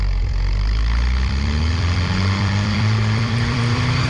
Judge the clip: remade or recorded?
remade